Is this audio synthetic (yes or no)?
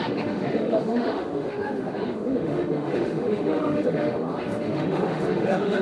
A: yes